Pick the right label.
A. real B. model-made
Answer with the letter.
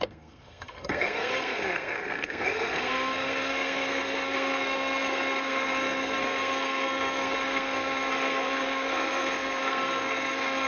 B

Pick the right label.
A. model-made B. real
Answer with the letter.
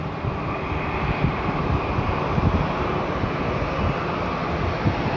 B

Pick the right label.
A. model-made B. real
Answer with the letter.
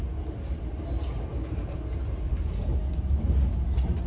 B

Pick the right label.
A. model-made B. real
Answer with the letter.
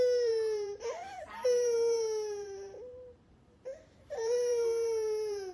A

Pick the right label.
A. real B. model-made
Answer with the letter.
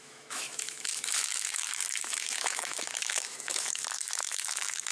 B